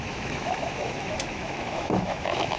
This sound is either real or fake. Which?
fake